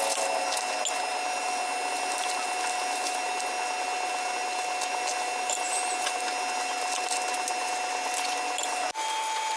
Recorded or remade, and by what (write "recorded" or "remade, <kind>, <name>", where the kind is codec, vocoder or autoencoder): recorded